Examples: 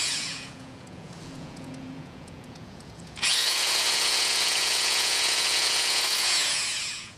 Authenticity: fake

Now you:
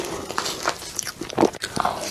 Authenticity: real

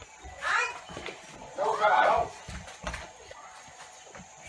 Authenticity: fake